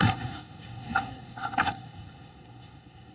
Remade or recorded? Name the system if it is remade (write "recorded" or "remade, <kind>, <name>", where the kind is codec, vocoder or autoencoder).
remade, codec, SNAC